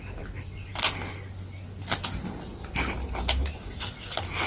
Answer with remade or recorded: recorded